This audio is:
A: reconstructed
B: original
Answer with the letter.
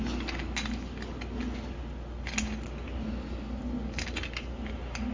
B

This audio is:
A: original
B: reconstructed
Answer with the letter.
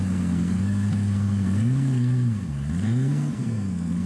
B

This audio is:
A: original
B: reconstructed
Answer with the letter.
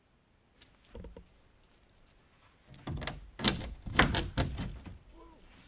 A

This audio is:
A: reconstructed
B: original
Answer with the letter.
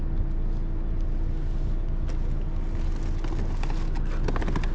B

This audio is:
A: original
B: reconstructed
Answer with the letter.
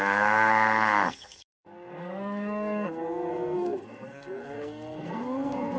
B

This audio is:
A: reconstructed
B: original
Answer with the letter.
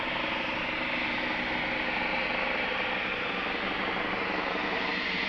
B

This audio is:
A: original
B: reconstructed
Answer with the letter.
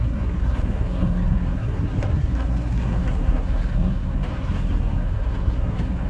B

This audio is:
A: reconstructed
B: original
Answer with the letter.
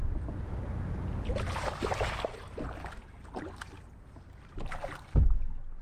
B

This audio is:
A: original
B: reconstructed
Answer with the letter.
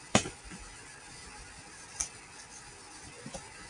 A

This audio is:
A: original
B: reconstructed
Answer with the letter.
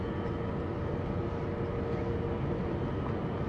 A